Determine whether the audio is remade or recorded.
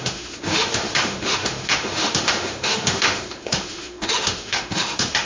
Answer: remade